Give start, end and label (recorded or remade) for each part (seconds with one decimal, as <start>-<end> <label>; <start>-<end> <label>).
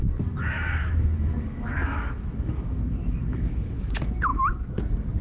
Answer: 0.0-0.8 recorded; 0.8-3.9 remade; 3.9-4.3 recorded; 4.3-4.8 remade; 4.8-5.2 recorded